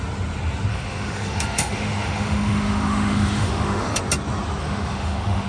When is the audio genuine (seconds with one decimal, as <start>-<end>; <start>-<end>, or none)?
0.0-0.7; 4.0-4.6